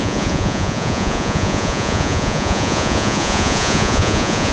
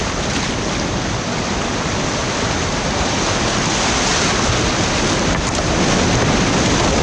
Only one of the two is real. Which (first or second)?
second